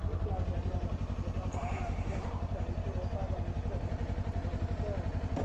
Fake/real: real